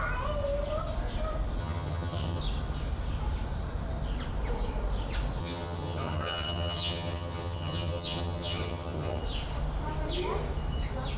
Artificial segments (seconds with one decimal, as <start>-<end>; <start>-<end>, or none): 1.6-2.4; 5.4-9.2